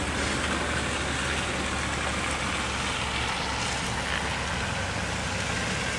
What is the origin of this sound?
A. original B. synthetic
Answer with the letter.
A